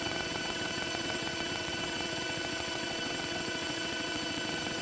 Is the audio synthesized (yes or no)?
yes